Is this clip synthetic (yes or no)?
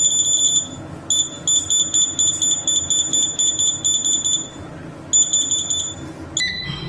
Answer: no